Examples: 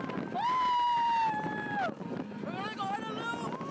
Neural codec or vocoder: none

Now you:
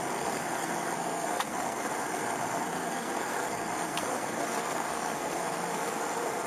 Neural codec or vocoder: codec, SNAC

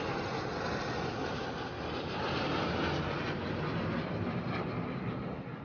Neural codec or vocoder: none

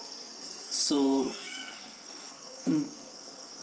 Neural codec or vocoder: codec, SNAC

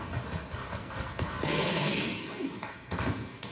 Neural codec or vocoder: codec, SNAC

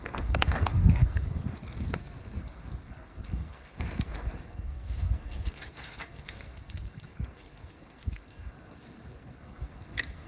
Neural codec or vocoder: codec, SNAC